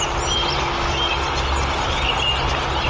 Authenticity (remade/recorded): recorded